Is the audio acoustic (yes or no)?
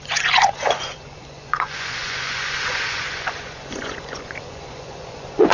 no